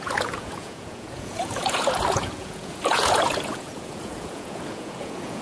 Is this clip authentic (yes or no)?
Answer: no